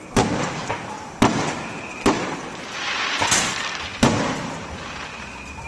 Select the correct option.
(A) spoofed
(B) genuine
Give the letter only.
A